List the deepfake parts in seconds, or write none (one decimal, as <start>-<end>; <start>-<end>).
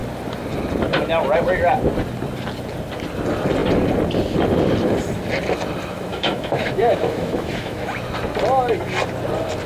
6.1-7.8